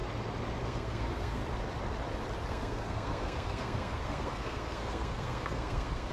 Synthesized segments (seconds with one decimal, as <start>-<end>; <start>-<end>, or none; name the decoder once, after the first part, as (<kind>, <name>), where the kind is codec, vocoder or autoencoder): 0.6-1.4 (codec, SNAC); 2.5-6.1